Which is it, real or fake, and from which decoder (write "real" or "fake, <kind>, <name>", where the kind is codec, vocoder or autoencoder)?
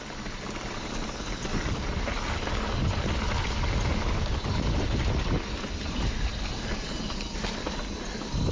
real